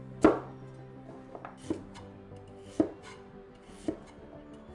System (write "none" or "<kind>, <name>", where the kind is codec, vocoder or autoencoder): none